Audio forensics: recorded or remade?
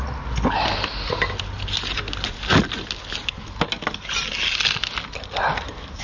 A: recorded